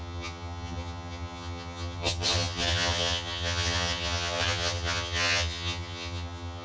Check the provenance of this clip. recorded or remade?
remade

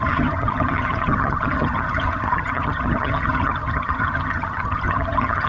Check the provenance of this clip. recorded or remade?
remade